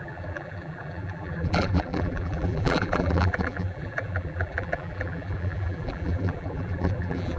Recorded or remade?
remade